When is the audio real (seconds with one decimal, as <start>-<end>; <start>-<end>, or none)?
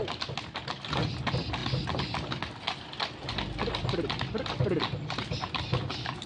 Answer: 0.0-6.3